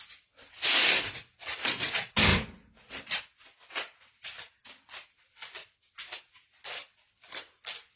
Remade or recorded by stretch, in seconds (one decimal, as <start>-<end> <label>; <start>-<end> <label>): 0.0-0.8 recorded; 0.8-1.9 remade; 1.9-8.0 recorded